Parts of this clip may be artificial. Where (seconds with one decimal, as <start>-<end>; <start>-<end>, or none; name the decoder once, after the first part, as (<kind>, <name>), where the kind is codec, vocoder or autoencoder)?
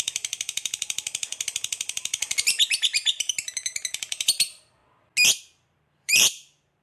0.0-4.8 (vocoder, BigVGAN v2); 5.4-6.8